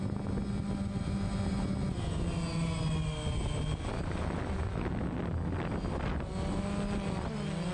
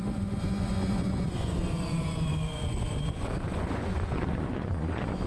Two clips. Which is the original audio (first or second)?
first